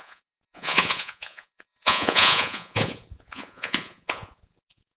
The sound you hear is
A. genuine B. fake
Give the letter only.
B